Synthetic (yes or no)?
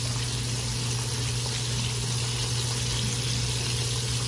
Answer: no